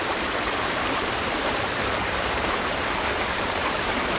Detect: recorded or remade remade